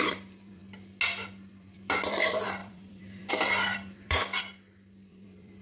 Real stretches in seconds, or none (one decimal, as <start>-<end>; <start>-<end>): 0.6-1.5; 4.2-5.1